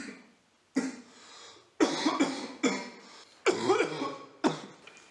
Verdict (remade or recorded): recorded